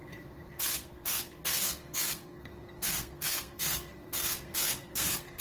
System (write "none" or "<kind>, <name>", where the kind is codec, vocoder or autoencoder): codec, SNAC